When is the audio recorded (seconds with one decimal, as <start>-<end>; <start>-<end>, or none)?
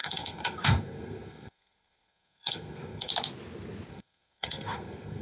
3.1-3.9